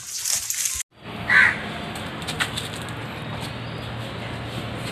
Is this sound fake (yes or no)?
no